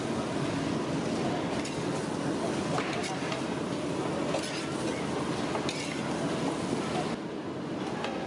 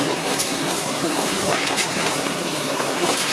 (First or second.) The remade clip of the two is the second